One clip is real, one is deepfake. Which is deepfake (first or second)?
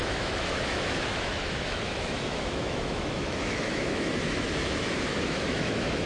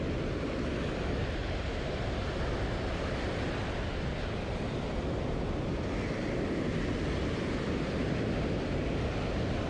first